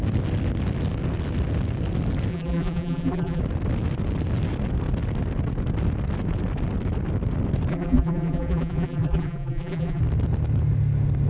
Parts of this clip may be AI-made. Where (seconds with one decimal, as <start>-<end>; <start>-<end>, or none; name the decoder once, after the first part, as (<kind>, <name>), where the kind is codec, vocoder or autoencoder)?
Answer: 2.3-3.4 (vocoder, BigVGAN v2); 7.7-10.0